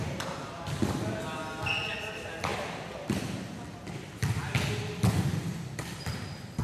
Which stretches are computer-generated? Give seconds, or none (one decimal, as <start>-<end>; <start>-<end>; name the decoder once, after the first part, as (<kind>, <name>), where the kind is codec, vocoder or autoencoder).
none